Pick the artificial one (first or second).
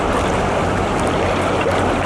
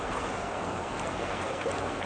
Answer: second